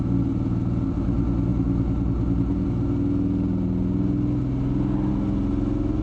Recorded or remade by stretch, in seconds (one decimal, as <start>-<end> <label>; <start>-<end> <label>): 0.0-6.0 recorded